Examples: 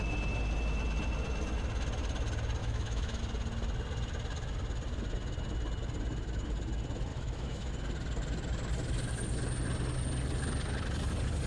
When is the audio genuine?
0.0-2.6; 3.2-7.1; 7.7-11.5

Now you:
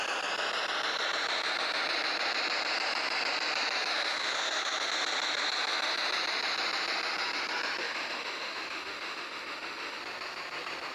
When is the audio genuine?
0.0-3.9; 4.9-7.8; 10.0-10.9

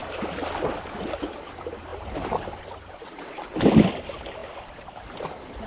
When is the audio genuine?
0.0-5.7

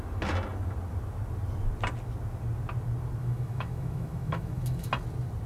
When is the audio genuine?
0.0-3.2; 4.9-5.5

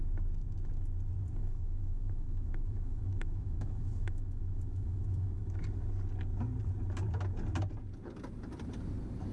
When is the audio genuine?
0.0-1.4; 5.6-9.3

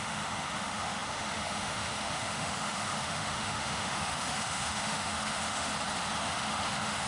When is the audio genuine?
5.7-6.2